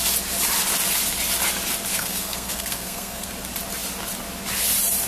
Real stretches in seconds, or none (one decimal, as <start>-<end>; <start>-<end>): 0.0-1.9; 3.3-5.1